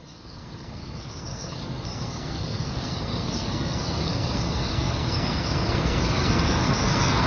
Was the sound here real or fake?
fake